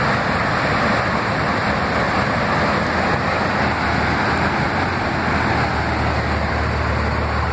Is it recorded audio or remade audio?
recorded